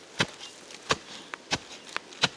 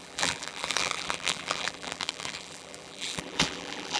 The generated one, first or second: second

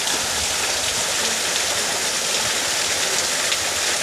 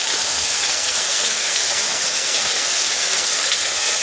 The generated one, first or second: second